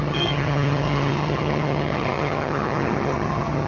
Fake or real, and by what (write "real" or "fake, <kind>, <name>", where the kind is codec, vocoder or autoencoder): fake, vocoder, HiFi-GAN